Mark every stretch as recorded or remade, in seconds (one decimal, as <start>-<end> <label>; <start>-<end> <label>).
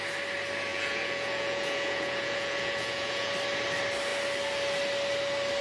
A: 0.0-0.7 recorded; 0.7-3.3 remade; 3.3-5.6 recorded